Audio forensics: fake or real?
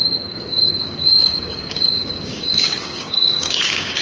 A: fake